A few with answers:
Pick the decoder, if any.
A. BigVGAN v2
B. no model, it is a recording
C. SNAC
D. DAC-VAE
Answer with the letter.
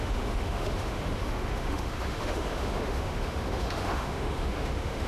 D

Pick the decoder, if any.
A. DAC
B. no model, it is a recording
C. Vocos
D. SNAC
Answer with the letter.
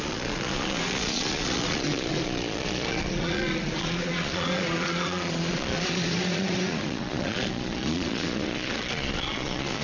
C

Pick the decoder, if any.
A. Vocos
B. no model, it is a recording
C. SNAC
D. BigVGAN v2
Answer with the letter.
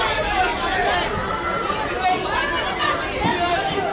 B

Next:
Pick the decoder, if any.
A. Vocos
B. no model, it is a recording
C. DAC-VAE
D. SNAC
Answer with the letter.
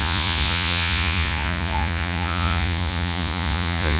A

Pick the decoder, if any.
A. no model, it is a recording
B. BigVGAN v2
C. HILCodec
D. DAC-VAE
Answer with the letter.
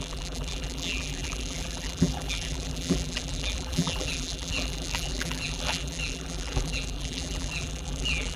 B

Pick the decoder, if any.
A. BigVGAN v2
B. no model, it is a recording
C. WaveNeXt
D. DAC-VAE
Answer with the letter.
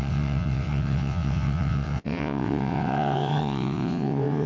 C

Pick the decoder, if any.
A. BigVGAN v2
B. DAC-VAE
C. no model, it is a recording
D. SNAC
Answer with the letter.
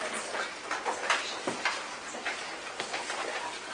C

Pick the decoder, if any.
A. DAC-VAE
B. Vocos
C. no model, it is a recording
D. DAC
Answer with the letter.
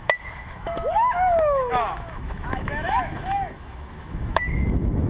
A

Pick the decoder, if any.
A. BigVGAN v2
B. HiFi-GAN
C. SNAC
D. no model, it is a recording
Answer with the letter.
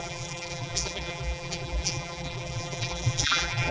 A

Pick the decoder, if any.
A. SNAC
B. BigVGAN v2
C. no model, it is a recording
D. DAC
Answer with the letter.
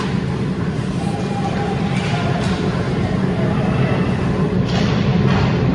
B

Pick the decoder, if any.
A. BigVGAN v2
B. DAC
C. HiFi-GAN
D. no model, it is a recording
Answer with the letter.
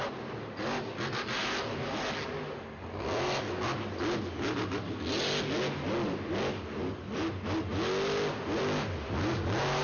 D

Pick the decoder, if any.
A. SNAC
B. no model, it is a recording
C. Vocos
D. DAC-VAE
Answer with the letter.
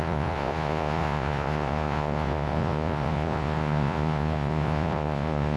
C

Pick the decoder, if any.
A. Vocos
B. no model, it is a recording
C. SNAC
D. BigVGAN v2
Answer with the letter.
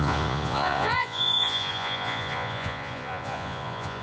A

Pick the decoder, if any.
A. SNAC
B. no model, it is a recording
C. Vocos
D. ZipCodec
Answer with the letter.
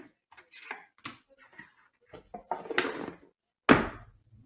B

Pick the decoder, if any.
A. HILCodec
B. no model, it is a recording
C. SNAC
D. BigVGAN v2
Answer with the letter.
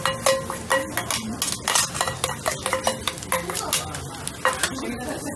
B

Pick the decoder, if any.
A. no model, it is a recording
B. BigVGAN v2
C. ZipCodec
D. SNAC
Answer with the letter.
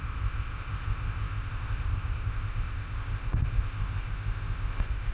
C